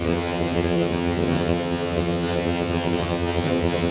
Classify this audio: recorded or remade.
remade